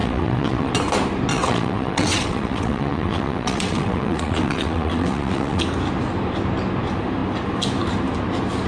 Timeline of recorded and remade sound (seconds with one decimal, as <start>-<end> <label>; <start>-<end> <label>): 0.0-0.7 remade; 0.7-1.3 recorded; 1.3-5.6 remade; 5.6-8.7 recorded